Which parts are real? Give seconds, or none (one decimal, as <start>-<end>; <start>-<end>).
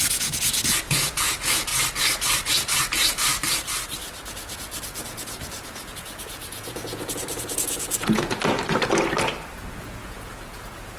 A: 1.7-2.5; 3.3-4.3; 8.4-9.8